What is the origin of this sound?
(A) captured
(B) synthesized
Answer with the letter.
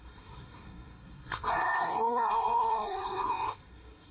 B